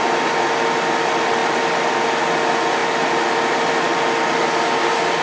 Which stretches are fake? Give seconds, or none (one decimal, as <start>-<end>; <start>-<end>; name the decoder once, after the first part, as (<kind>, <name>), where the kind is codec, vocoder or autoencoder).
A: none